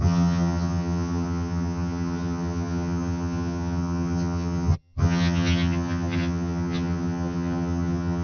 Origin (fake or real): fake